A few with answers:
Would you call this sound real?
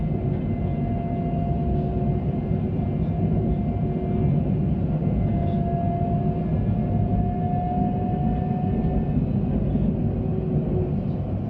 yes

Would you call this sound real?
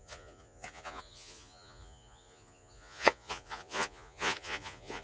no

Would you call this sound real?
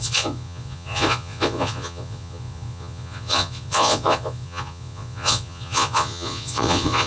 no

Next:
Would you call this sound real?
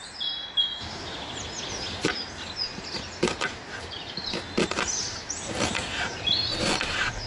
yes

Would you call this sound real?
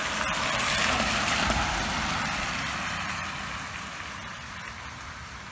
yes